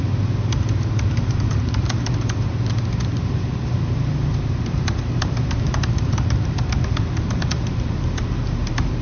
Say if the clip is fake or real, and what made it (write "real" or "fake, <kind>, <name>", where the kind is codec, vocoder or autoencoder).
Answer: fake, vocoder, BigVGAN v2